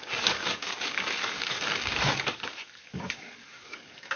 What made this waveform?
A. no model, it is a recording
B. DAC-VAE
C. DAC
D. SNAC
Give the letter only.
C